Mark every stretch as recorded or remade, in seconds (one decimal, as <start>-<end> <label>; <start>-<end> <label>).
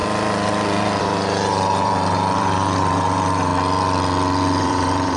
0.0-1.0 recorded; 1.0-3.5 remade; 3.5-4.6 recorded; 4.6-5.2 remade